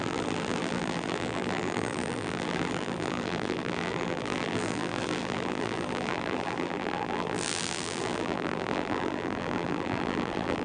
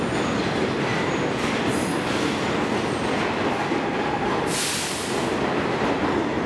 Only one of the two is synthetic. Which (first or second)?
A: first